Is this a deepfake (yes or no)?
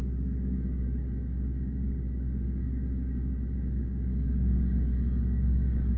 yes